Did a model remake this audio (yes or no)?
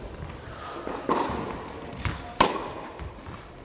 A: no